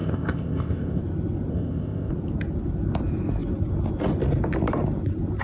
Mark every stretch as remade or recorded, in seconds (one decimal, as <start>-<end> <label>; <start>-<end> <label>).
0.0-1.0 remade; 1.0-1.5 recorded; 1.5-2.1 remade; 2.1-5.4 recorded

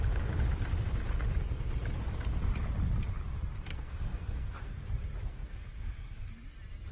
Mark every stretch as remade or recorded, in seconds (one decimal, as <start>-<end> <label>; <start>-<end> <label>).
0.0-3.7 recorded; 3.7-4.8 remade; 4.8-5.2 recorded; 5.2-6.3 remade; 6.3-6.9 recorded